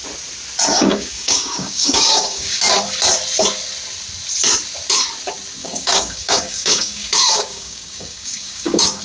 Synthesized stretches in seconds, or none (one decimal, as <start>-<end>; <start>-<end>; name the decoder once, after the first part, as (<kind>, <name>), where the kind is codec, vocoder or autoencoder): 0.7-2.7 (codec, DAC); 5.6-9.0